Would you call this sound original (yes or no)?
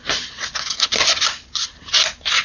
yes